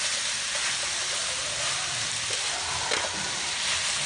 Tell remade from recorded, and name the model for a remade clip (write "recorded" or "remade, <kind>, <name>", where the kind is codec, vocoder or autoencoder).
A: recorded